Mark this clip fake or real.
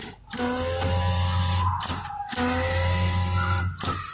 real